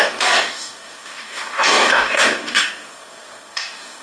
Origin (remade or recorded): remade